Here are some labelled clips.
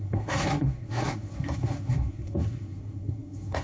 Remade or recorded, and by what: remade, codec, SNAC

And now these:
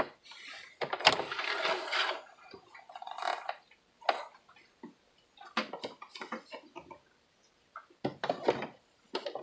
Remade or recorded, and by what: recorded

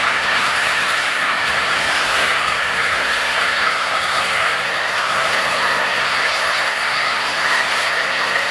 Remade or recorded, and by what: remade, codec, SNAC